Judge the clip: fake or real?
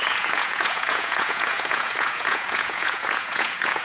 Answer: fake